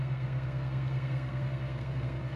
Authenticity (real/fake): fake